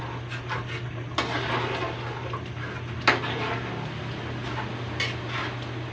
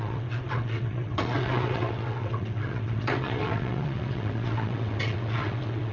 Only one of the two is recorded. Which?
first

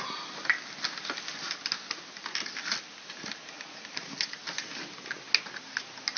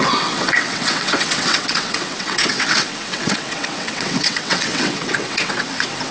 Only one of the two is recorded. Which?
first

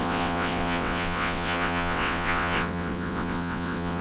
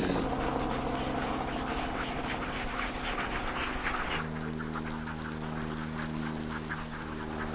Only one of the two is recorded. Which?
second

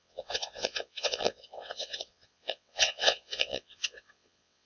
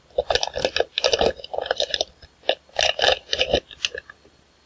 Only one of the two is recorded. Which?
second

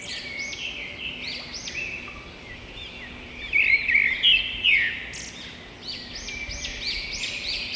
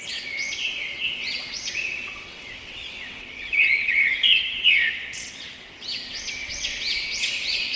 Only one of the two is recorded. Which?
first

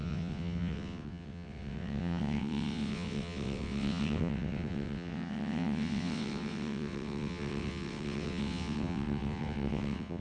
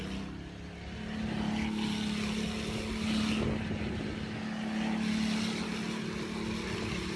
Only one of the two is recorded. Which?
second